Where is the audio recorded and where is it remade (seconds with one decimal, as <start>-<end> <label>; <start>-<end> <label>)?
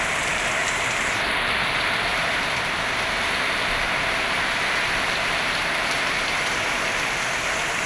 0.0-0.6 remade; 0.6-1.1 recorded; 1.1-7.9 remade